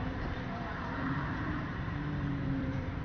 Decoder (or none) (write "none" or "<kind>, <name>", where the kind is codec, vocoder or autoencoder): vocoder, BigVGAN v2